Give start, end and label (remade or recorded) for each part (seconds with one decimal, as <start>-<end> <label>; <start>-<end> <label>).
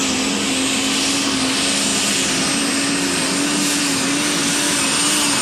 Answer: 0.0-5.4 recorded